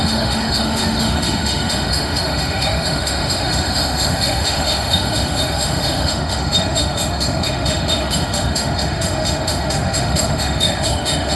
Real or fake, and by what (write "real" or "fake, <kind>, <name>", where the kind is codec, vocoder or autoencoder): fake, autoencoder, DAC-VAE